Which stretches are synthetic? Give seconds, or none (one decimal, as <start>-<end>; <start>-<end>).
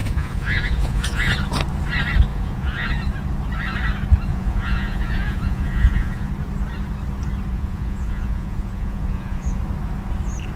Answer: 0.0-1.3; 2.3-2.9; 4.3-6.3; 7.5-9.6